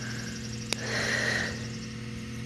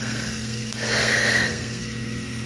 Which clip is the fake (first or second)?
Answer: second